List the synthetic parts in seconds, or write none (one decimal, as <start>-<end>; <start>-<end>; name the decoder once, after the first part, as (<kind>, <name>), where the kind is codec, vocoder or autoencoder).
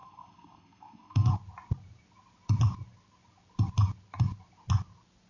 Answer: 0.0-1.3 (codec, SNAC)